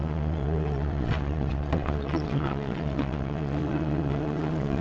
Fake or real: fake